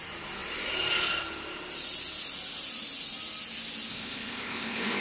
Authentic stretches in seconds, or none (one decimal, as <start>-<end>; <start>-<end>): 0.0-3.9